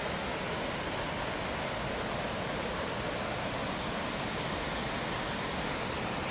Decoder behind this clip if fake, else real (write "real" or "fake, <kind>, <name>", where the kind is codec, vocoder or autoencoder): real